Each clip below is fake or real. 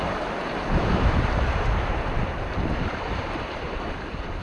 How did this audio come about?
fake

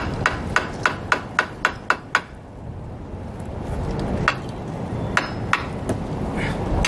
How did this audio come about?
real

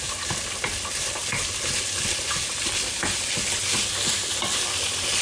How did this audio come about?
real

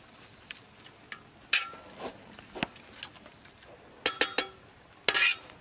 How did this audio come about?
real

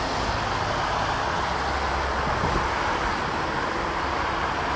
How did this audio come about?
real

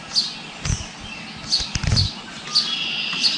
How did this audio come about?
real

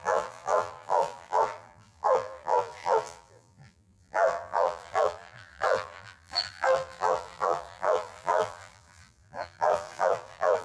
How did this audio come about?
fake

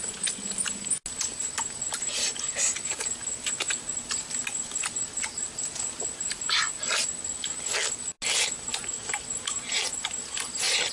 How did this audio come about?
real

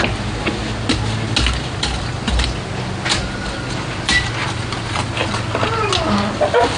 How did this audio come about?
real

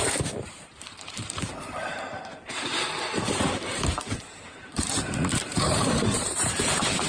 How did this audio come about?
fake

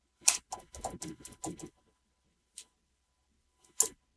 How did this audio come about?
real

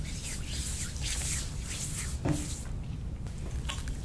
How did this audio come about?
real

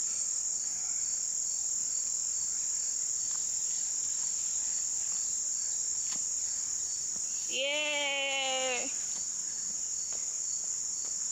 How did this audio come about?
real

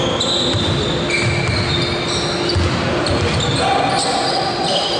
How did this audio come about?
real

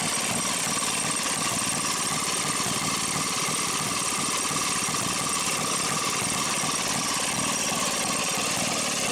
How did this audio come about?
real